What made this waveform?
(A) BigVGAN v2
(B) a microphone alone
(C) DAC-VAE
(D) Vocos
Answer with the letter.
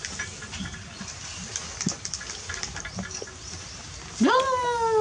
B